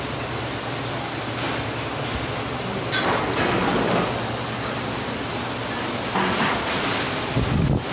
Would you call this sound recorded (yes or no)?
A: yes